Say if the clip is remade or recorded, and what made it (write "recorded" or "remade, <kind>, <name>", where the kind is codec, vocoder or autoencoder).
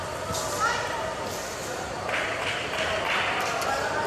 remade, vocoder, BigVGAN v2